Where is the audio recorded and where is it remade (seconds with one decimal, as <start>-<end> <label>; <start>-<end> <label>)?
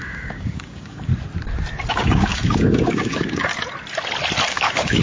0.0-1.1 remade; 1.1-1.9 recorded; 1.9-3.5 remade; 3.5-4.5 recorded; 4.5-5.0 remade